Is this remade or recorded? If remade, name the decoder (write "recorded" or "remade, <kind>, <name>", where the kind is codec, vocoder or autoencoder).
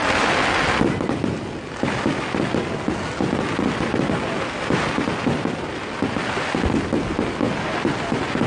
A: recorded